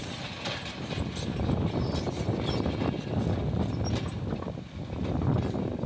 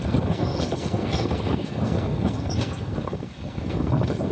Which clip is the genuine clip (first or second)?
first